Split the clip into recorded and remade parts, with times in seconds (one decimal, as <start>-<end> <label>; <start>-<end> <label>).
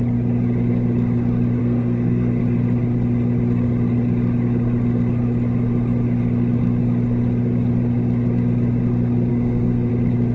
0.0-1.6 recorded; 1.6-2.4 remade; 2.4-9.3 recorded; 9.3-9.9 remade; 9.9-10.3 recorded